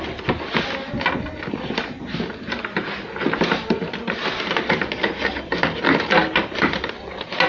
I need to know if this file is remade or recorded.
recorded